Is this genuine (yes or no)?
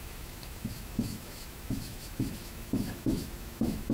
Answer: no